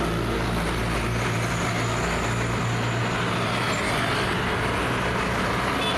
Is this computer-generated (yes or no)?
no